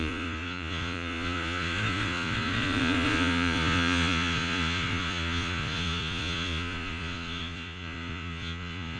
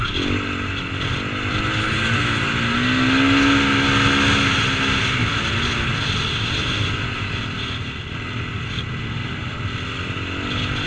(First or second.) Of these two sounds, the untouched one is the second